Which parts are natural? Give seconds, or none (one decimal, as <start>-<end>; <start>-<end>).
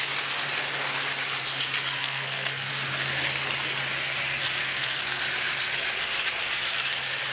0.0-2.0; 2.7-4.6; 5.2-7.3